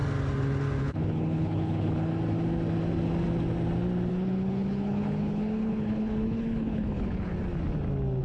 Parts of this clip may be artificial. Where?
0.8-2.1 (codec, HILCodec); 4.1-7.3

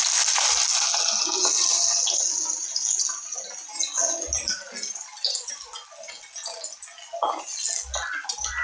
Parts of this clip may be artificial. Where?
none

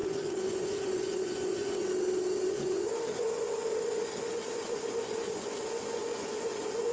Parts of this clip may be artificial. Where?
0.0-1.8 (vocoder, Vocos); 2.4-6.9

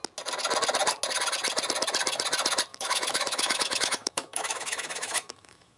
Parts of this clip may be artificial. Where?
2.7-5.8 (autoencoder, DAC-VAE)